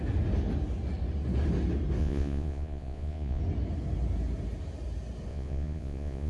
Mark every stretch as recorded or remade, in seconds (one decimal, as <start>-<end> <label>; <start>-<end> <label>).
0.0-2.0 recorded; 2.0-3.4 remade; 3.4-5.3 recorded; 5.3-6.3 remade